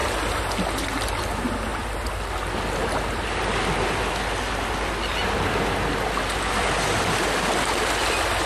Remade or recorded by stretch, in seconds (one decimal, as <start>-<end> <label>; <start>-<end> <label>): 0.0-8.5 recorded